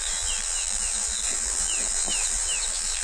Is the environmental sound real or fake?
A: fake